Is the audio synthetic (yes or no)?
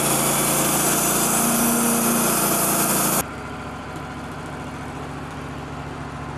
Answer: no